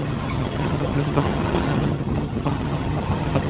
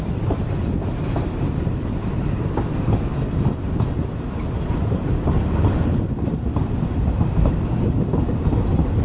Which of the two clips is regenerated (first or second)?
first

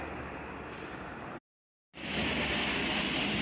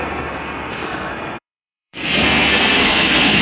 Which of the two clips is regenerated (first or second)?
second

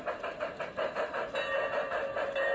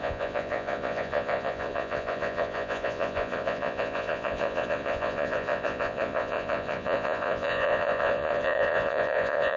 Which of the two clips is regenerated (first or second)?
second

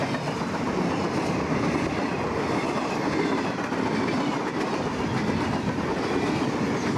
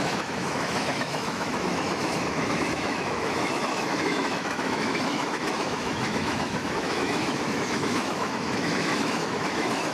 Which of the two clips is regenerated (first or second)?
second